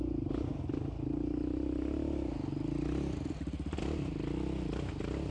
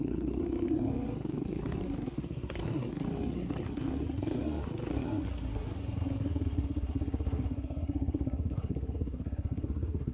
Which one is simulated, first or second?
second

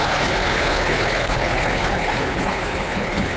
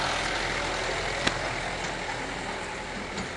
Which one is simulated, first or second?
first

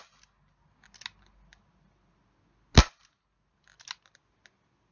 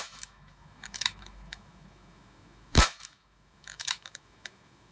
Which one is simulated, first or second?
second